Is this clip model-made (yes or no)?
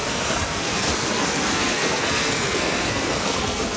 yes